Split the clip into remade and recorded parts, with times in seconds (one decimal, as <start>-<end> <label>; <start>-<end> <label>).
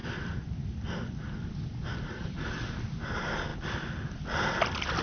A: 0.0-5.0 recorded